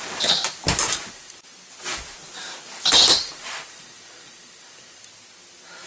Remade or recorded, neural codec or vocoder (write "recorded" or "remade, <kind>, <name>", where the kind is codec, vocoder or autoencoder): recorded